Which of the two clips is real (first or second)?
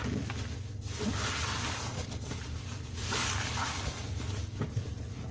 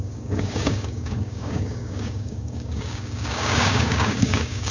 first